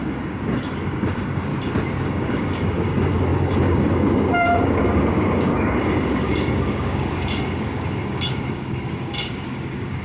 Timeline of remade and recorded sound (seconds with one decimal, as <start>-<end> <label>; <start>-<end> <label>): 0.0-1.5 remade; 1.5-2.0 recorded; 2.0-10.0 remade